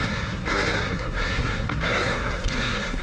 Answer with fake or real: fake